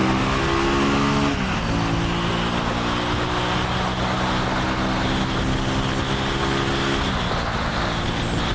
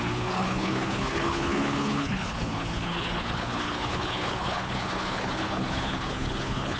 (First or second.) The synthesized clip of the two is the second